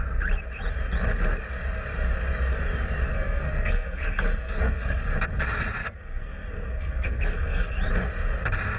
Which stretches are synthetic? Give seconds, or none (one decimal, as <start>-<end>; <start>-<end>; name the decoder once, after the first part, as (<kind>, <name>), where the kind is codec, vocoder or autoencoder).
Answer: 3.1-5.0 (codec, SNAC); 5.8-7.7